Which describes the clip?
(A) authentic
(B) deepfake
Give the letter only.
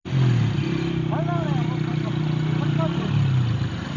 A